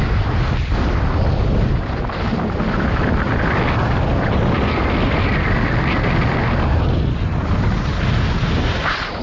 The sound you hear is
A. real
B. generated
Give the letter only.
A